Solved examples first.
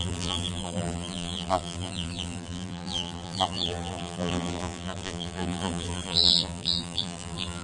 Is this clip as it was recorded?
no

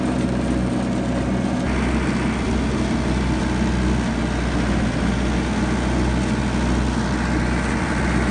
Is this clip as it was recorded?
yes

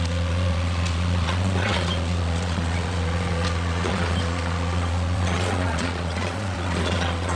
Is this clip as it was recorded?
no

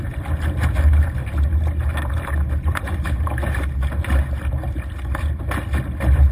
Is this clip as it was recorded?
yes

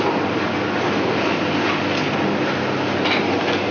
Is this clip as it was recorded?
yes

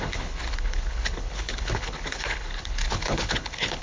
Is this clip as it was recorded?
no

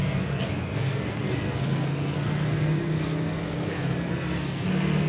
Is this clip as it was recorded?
no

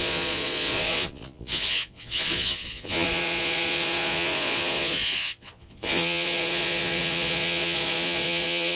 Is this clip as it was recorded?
no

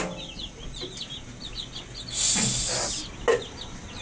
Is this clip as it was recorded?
yes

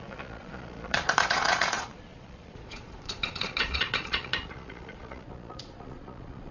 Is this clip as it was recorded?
no